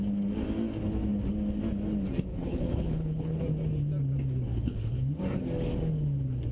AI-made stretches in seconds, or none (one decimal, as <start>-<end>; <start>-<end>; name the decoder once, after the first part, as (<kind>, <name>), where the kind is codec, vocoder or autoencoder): 2.3-3.4 (codec, HILCodec); 4.5-5.2